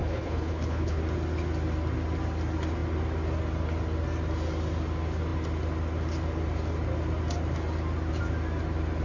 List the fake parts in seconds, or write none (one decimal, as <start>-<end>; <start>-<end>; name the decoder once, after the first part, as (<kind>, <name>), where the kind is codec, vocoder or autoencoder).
0.0-1.0 (codec, HILCodec)

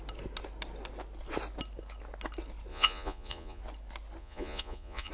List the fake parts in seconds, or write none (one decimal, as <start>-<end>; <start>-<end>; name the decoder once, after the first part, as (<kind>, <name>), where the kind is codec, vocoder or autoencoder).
2.7-3.6 (vocoder, Vocos); 4.2-5.1

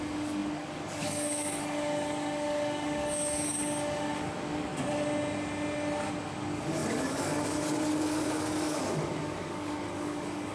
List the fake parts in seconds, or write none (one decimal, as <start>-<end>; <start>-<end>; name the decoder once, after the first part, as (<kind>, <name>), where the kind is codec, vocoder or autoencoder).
0.0-4.7 (codec, DAC); 6.2-10.5

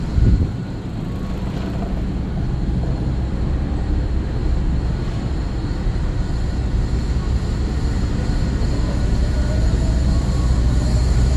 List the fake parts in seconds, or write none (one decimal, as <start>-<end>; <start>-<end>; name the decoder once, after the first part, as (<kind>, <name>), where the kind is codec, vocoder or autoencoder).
0.0-0.9 (vocoder, BigVGAN v2); 2.9-4.4; 8.6-11.4

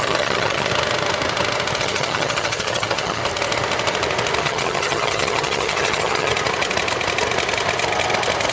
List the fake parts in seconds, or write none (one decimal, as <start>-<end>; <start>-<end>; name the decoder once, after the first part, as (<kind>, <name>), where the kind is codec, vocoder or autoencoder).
0.0-0.7 (vocoder, HiFi-GAN); 1.8-3.2; 4.4-6.3

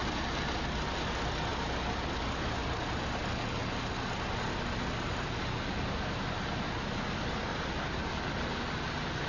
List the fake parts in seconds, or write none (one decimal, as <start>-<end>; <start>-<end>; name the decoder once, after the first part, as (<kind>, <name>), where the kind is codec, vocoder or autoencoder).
2.6-3.1 (vocoder, BigVGAN v2); 7.5-8.1